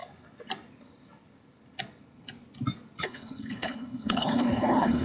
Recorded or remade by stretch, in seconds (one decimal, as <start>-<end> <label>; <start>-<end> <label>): 0.0-3.0 recorded; 3.0-5.0 remade